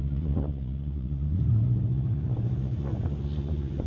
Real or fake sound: fake